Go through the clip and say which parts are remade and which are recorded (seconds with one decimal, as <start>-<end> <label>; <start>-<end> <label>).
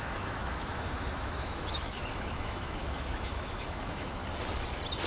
0.0-4.2 remade; 4.2-5.1 recorded